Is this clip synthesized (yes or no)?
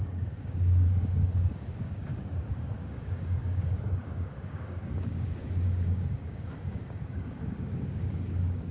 yes